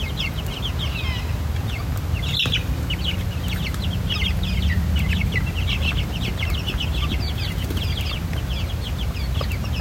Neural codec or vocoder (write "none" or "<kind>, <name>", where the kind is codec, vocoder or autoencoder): none